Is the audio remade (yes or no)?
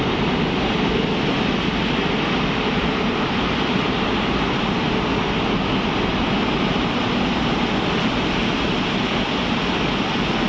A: no